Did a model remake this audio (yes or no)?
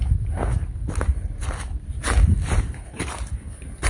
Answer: no